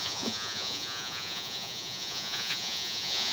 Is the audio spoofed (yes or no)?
yes